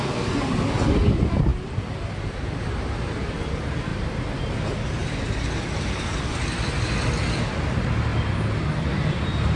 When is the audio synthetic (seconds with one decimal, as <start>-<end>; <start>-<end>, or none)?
1.5-2.6; 8.1-9.6